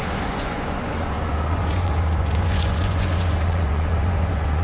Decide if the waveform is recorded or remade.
remade